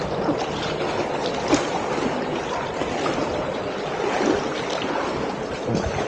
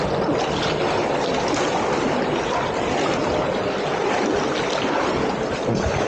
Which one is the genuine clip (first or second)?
second